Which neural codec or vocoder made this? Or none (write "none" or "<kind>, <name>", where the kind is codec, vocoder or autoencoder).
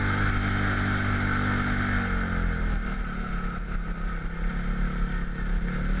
none